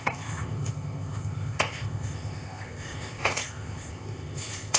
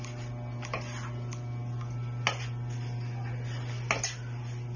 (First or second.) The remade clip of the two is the first